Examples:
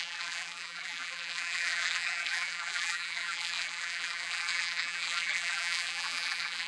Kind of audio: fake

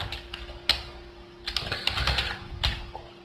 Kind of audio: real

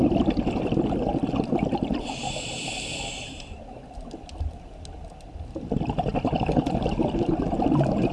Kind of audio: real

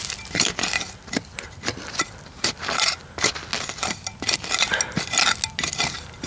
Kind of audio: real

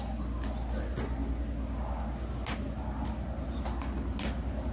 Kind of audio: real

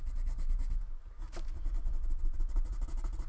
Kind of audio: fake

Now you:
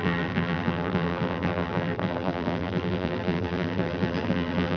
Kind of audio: fake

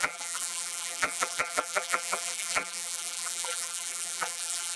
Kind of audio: fake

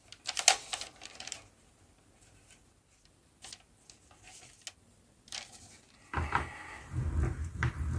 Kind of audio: real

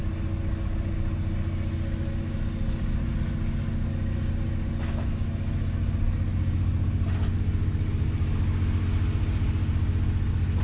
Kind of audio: real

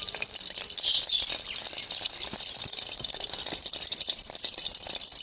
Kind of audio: real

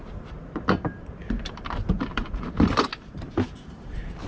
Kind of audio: fake